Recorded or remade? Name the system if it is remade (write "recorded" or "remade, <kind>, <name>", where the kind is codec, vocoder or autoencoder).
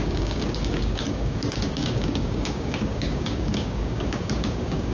remade, codec, DAC